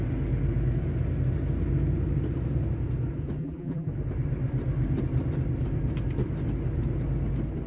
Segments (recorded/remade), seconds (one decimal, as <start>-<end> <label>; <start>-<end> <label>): 0.0-3.4 recorded; 3.4-3.9 remade; 3.9-7.7 recorded